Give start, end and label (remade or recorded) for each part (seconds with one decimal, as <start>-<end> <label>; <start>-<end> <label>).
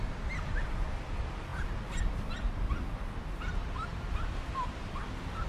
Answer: 0.0-5.5 recorded